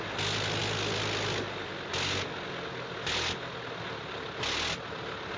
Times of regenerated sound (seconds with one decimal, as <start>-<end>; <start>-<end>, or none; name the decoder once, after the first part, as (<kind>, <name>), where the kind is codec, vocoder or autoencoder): none